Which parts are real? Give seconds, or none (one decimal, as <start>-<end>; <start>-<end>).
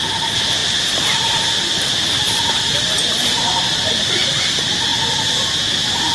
0.0-6.1